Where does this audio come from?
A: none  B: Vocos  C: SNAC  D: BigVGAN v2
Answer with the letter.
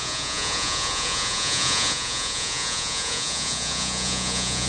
B